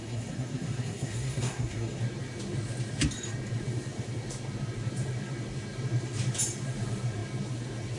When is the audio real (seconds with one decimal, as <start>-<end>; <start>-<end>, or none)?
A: 2.0-8.0